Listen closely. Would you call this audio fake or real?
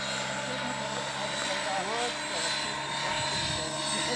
real